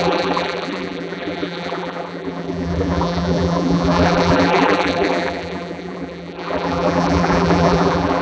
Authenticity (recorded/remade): remade